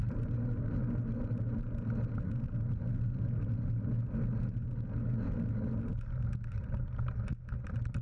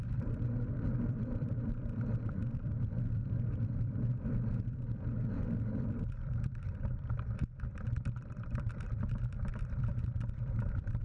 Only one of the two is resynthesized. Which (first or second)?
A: second